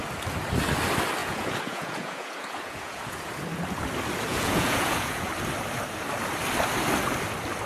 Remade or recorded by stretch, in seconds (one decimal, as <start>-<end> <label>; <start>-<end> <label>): 0.0-1.2 recorded; 1.2-3.3 remade; 3.3-4.3 recorded; 4.3-5.3 remade; 5.3-7.7 recorded